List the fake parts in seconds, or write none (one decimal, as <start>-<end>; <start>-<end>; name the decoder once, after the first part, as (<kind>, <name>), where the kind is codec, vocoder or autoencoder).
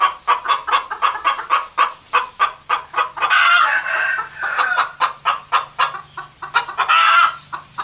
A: none